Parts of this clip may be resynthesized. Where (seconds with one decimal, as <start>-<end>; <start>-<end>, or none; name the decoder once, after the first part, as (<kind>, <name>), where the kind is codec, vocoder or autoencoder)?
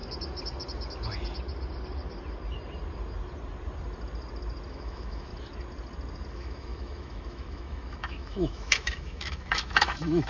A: 4.7-5.3 (autoencoder, DAC-VAE); 6.3-10.3